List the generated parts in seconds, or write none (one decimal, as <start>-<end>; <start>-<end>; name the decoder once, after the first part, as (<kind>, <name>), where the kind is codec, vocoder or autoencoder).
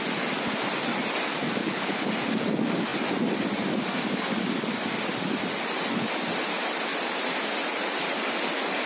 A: 1.6-2.1 (codec, HILCodec)